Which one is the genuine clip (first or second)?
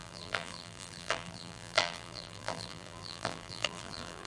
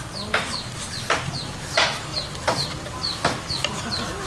second